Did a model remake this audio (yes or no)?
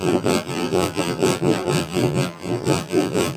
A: yes